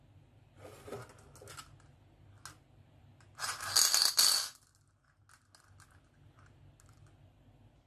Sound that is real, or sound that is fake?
real